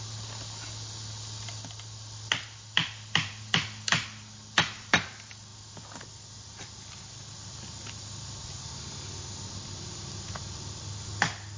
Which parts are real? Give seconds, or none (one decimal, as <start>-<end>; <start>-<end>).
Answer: 0.0-11.6